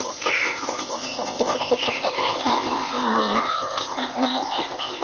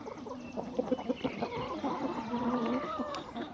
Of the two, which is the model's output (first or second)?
first